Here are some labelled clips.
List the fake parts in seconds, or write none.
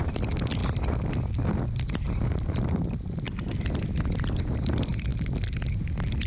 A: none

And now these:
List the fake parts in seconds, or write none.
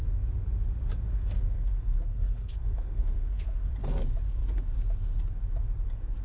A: 1.1-3.7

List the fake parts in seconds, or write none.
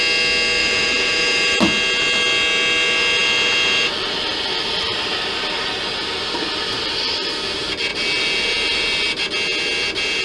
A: 0.6-1.6; 7.9-9.1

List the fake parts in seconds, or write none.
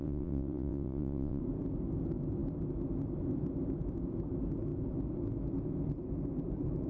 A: 0.0-1.4